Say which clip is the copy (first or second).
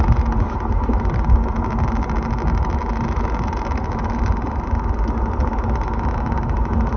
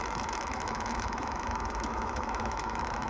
second